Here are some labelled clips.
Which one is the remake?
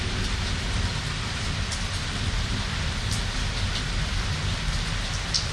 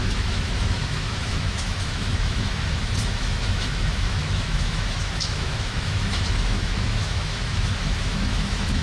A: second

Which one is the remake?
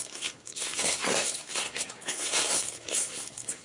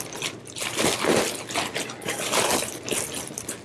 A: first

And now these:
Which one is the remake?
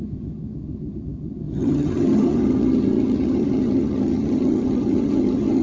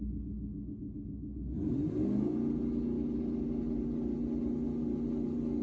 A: first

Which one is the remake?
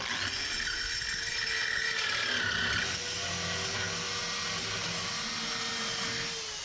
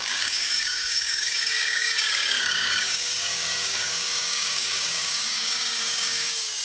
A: second